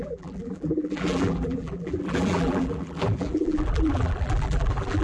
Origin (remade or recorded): remade